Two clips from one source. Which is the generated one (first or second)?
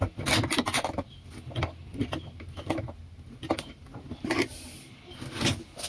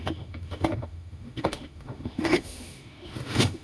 second